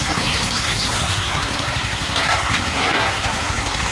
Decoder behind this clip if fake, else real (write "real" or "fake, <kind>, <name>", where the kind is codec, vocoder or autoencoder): fake, codec, SNAC